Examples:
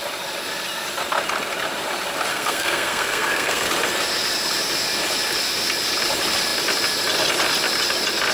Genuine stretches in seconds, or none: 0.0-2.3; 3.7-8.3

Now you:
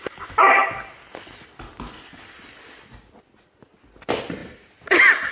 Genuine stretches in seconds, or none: 0.0-5.3

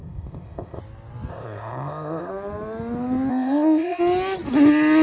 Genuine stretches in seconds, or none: 0.8-1.3; 2.3-3.3; 4.0-5.0

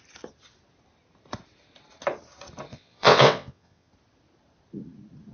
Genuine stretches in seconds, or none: 0.0-2.7; 3.9-5.3

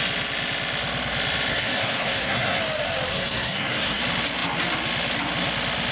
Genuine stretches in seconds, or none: 0.0-1.5; 2.6-3.1; 4.0-5.9

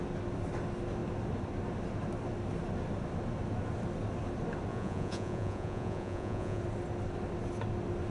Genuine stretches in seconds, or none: 0.0-4.7; 6.6-8.1